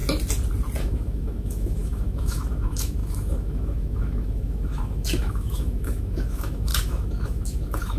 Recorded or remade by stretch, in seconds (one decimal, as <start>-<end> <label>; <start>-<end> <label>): 0.0-0.8 recorded; 0.8-8.0 remade